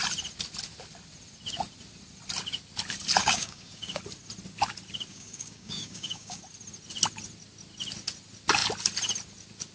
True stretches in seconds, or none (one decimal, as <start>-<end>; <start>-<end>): 0.0-3.2; 4.0-5.1; 6.4-9.7

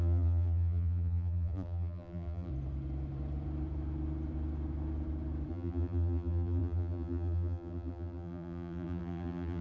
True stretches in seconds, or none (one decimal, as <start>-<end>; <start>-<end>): 2.5-5.5

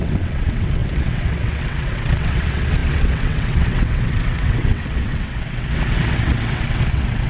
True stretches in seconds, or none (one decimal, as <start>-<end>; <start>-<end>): none

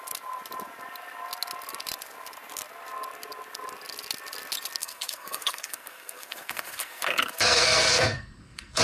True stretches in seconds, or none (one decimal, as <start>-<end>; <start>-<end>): 0.0-4.8

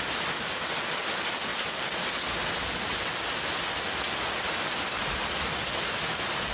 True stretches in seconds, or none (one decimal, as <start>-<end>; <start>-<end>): 0.0-6.5